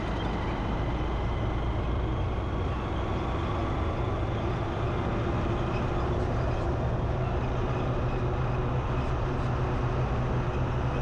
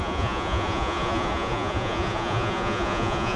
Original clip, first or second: first